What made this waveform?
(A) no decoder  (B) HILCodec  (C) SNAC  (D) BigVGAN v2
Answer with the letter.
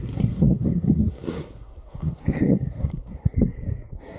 C